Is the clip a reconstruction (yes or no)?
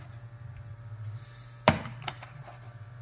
no